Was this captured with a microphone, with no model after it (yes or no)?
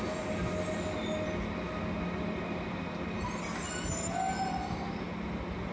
yes